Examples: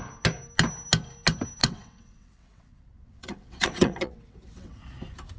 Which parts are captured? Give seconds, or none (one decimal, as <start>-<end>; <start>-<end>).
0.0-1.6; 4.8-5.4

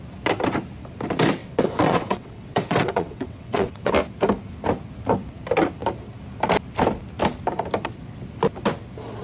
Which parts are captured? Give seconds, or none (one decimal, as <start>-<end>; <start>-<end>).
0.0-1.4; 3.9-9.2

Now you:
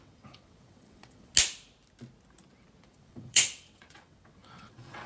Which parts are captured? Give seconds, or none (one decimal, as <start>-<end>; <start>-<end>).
1.3-2.9